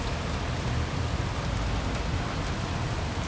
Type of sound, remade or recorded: recorded